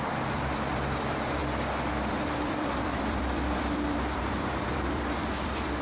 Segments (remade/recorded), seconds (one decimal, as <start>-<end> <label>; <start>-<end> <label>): 0.0-5.8 remade